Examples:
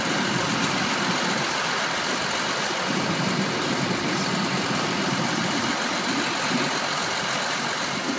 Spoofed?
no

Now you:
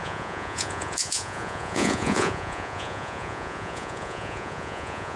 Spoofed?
yes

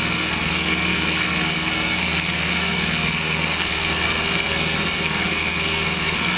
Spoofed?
yes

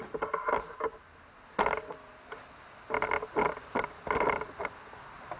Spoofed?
no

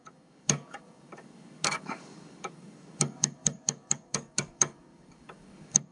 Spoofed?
yes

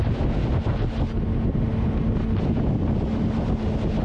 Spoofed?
no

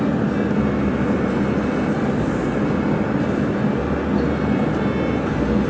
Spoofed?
no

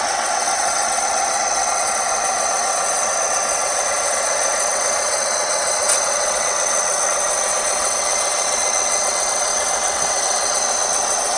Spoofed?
yes